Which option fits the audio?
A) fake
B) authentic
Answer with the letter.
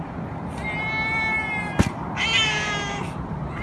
B